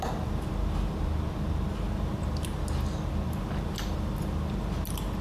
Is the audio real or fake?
real